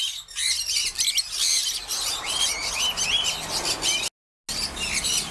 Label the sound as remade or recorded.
recorded